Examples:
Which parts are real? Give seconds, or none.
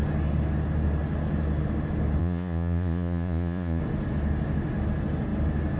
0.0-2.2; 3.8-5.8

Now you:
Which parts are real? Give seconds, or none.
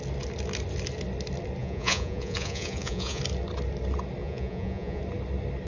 0.0-1.6; 3.2-4.2; 5.0-5.7